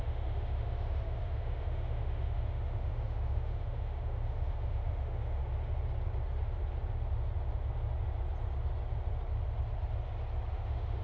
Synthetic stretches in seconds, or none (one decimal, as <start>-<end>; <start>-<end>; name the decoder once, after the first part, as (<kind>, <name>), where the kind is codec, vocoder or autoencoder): 0.0-5.4 (autoencoder, DAC-VAE); 10.5-11.0

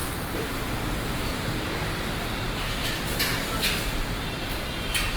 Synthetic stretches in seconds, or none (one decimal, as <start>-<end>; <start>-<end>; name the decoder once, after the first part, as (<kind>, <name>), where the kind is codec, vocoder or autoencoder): none

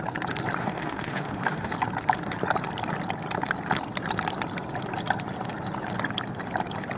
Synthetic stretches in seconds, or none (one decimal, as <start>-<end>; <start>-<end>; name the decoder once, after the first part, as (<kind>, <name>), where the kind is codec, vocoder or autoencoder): 0.6-1.7 (autoencoder, DAC-VAE)